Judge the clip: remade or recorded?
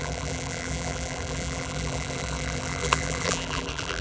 remade